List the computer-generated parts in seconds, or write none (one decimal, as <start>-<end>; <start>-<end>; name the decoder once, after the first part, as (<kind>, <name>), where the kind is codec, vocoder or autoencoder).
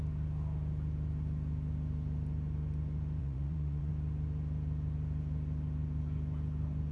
3.2-3.9 (vocoder, Vocos)